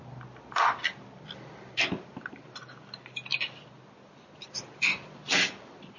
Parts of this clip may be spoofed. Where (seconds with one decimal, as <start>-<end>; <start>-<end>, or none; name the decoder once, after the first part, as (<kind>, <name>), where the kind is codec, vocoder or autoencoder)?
none